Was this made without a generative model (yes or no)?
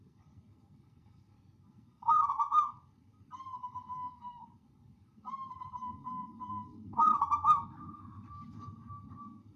no